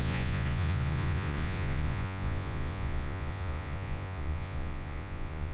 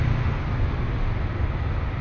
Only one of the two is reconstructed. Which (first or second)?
first